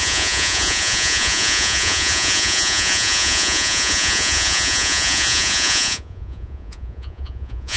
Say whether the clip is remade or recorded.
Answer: remade